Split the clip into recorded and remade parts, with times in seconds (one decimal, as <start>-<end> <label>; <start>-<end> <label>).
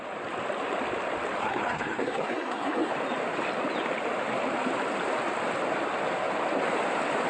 0.0-1.4 recorded; 1.4-2.9 remade; 2.9-7.3 recorded